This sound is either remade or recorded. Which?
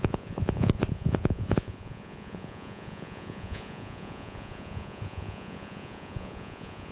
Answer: remade